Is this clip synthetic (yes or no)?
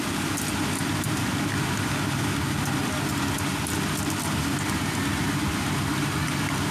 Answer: no